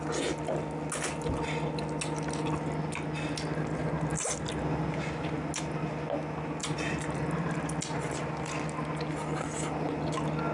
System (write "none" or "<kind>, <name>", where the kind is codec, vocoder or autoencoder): none